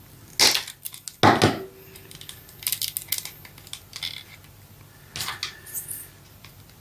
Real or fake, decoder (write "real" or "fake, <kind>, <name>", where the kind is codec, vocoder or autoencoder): real